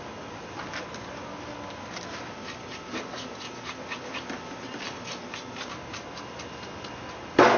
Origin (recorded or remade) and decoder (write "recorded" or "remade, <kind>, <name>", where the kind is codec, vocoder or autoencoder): recorded